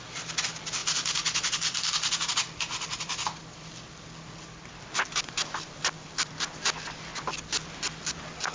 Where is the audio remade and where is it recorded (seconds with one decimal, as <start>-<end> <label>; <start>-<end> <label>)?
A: 0.0-0.8 remade; 0.8-4.8 recorded; 4.8-7.1 remade; 7.1-7.9 recorded; 7.9-8.5 remade